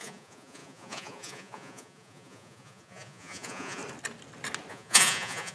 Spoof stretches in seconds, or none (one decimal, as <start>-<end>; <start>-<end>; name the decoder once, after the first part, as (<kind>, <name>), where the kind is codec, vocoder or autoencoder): 0.0-3.8 (vocoder, Vocos); 4.7-5.5